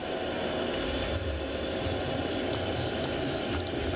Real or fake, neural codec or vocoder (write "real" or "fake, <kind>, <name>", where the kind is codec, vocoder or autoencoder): real